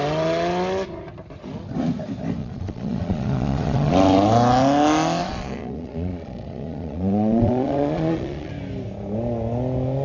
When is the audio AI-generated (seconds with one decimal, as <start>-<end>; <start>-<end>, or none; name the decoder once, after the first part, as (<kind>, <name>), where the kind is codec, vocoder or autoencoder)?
2.4-3.9 (vocoder, Vocos); 5.2-8.5